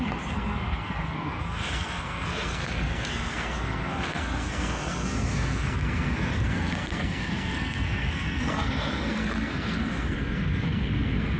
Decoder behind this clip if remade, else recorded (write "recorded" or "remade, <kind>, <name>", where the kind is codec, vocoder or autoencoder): remade, codec, SNAC